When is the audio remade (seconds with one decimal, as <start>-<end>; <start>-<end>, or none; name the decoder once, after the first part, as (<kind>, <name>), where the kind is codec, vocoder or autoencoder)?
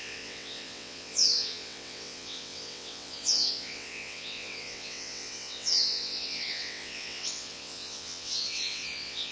0.0-9.3 (vocoder, WaveNeXt)